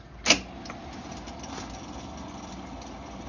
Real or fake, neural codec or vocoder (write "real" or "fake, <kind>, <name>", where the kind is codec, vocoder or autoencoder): real